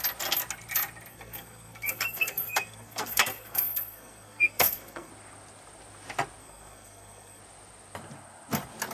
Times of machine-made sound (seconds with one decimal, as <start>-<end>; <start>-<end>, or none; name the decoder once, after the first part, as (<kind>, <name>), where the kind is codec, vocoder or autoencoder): 1.1-5.1 (codec, SNAC); 6.4-7.4